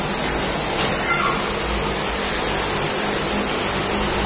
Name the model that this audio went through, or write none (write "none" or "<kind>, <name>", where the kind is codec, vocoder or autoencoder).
none